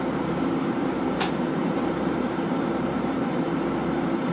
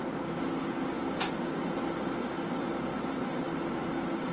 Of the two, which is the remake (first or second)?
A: first